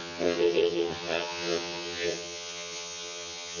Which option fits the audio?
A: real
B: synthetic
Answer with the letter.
B